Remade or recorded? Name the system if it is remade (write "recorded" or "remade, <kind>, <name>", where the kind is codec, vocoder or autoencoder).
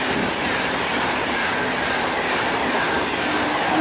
recorded